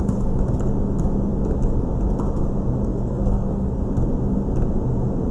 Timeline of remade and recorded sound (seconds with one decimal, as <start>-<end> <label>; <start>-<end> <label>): 0.0-2.9 recorded; 2.9-3.8 remade; 3.8-5.3 recorded